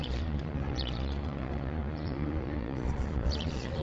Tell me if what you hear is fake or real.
fake